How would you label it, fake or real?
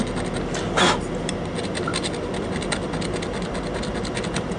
real